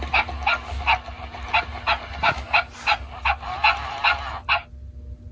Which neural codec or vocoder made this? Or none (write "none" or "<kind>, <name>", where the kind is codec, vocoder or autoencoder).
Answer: none